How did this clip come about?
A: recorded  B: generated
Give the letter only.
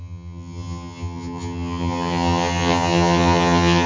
B